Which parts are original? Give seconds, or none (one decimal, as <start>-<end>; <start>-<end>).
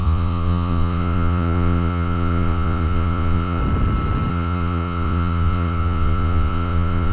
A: 3.6-4.3